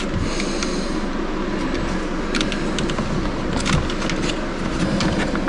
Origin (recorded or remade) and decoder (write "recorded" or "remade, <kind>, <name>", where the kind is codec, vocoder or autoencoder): recorded